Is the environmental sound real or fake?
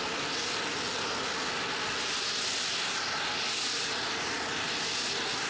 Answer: real